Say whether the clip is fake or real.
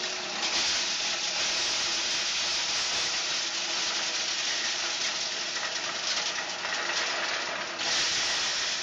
real